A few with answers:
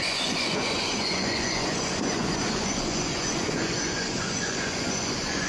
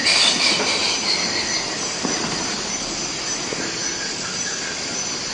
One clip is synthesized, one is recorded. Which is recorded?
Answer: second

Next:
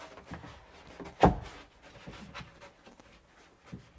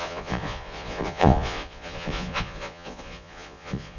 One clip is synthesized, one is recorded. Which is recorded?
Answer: first